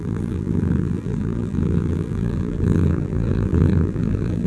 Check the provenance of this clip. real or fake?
fake